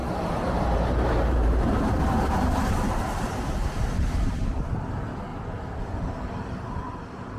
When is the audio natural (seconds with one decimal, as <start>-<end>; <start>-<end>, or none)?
4.3-7.4